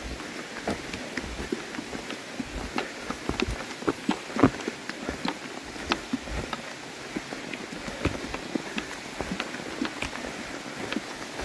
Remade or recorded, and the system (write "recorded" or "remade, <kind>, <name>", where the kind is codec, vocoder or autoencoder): recorded